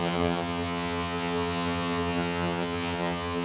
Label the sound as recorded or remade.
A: remade